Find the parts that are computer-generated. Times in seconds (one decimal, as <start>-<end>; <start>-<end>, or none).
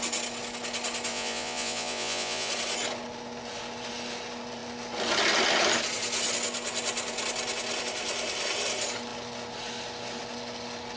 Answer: 1.1-2.5